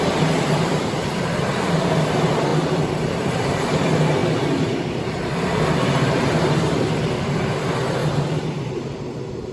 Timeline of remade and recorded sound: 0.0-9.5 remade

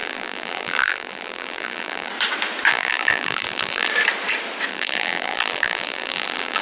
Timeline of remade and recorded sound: 0.0-2.1 remade; 2.1-2.7 recorded; 2.7-3.9 remade; 3.9-4.7 recorded; 4.7-6.6 remade